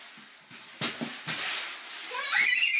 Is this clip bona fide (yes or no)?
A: yes